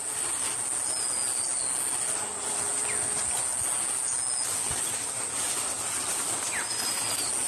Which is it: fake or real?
real